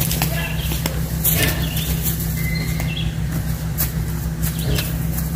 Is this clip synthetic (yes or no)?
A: no